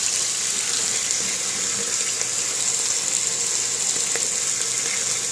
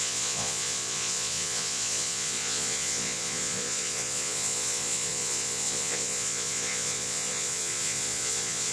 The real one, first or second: first